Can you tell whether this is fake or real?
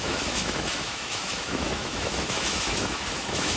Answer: fake